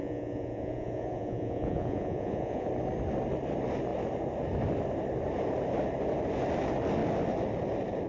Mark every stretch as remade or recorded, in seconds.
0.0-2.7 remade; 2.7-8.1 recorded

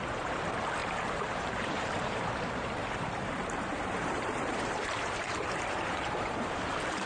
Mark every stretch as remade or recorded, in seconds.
0.0-0.8 recorded; 0.8-2.3 remade; 2.3-2.8 recorded; 2.8-6.4 remade; 6.4-7.1 recorded

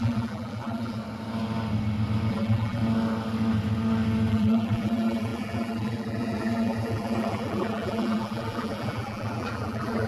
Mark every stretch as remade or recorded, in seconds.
0.0-1.0 remade; 1.0-2.3 recorded; 2.3-2.8 remade; 2.8-4.3 recorded; 4.3-10.1 remade

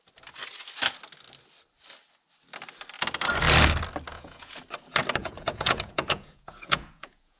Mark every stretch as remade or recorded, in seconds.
0.0-4.1 recorded; 4.1-4.6 remade; 4.6-5.2 recorded; 5.2-7.4 remade

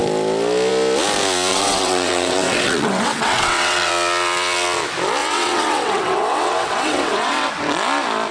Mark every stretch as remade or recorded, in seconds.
0.0-1.5 recorded; 1.5-3.9 remade; 3.9-5.2 recorded; 5.2-7.5 remade; 7.5-8.3 recorded

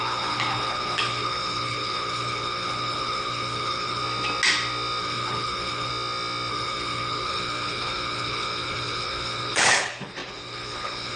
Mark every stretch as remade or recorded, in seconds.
0.0-4.0 remade; 4.0-5.0 recorded; 5.0-5.9 remade; 5.9-6.5 recorded; 6.5-11.2 remade

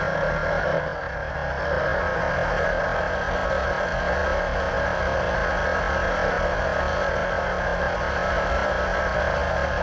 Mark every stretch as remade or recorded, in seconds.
0.0-9.8 recorded